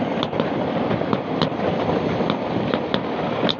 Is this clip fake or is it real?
fake